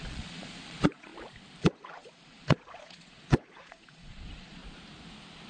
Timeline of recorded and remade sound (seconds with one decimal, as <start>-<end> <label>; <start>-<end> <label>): 0.0-1.1 remade; 1.1-1.6 recorded; 1.6-4.6 remade; 4.6-5.5 recorded